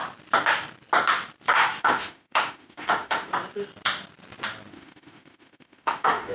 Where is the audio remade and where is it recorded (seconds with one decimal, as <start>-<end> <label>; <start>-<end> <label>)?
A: 0.0-1.8 recorded; 1.8-3.3 remade; 3.3-4.7 recorded; 4.7-6.3 remade

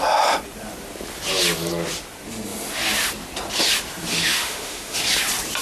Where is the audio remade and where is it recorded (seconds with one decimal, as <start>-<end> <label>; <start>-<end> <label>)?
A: 0.0-4.1 recorded; 4.1-5.0 remade; 5.0-5.6 recorded

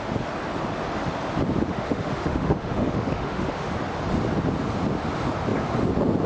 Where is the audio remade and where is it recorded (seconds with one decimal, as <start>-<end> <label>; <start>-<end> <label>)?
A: 0.0-1.7 recorded; 1.7-3.7 remade; 3.7-6.3 recorded